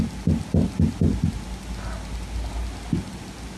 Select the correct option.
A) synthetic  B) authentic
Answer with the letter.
B